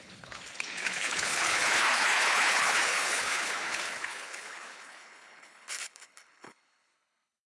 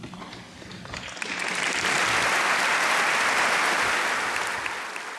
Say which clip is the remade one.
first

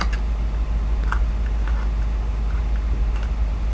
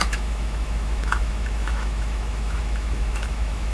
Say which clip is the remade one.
second